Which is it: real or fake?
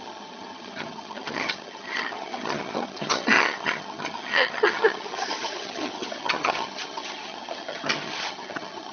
fake